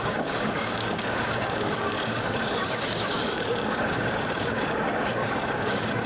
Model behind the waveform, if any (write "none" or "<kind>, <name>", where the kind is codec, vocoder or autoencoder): codec, DAC